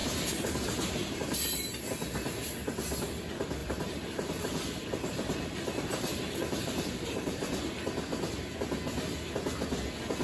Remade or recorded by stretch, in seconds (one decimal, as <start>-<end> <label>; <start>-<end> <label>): 0.0-1.5 remade; 1.5-3.6 recorded; 3.6-7.6 remade; 7.6-10.2 recorded